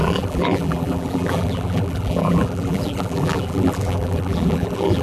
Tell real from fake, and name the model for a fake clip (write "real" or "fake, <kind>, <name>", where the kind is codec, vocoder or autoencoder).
fake, vocoder, BigVGAN v2